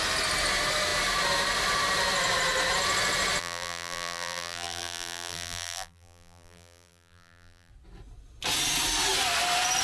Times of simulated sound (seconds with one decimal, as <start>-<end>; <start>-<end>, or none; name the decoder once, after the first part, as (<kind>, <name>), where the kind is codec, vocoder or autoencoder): 3.4-7.7 (vocoder, BigVGAN v2)